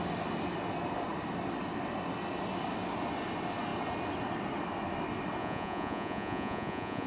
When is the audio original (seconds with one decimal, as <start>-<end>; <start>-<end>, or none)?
0.0-5.4